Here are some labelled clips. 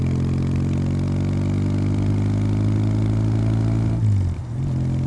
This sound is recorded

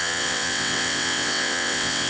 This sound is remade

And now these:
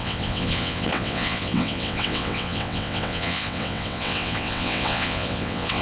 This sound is remade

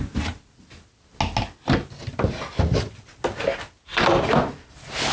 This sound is recorded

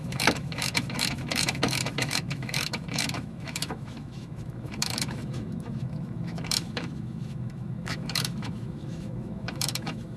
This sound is remade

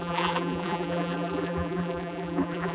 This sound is remade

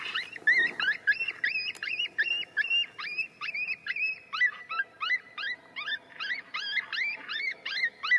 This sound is recorded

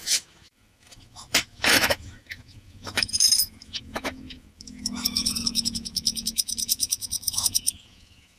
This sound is remade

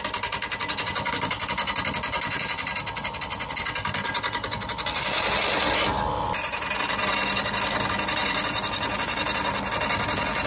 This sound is recorded